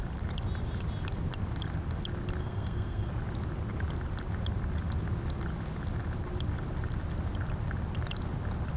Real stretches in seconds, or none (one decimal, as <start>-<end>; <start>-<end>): 0.0-2.4; 3.1-8.8